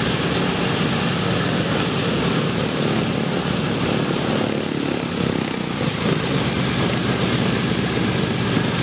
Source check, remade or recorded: recorded